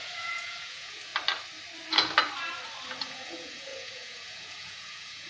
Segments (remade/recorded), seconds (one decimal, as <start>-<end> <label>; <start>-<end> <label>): 0.0-1.1 remade; 1.1-3.0 recorded; 3.0-5.3 remade